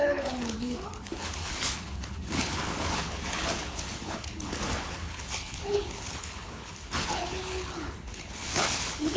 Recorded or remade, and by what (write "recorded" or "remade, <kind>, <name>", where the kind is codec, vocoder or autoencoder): remade, codec, HILCodec